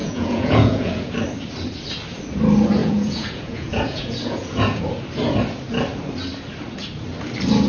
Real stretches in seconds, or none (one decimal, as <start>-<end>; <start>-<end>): 1.1-2.8; 4.8-7.7